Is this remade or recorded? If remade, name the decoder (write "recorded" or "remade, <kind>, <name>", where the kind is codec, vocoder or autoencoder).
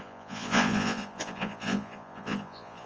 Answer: remade, vocoder, Vocos